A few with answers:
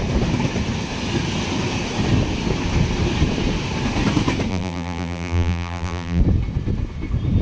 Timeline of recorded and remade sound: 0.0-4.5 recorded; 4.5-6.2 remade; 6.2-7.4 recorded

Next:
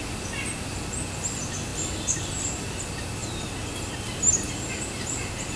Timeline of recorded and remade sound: 0.0-5.6 recorded

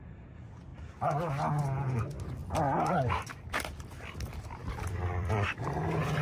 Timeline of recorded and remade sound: 0.0-4.6 recorded; 4.6-5.3 remade; 5.3-6.2 recorded

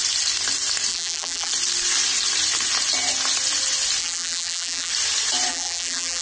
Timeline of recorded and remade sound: 0.0-0.9 recorded; 0.9-1.5 remade; 1.5-4.0 recorded; 4.0-4.9 remade; 4.9-5.5 recorded; 5.5-6.2 remade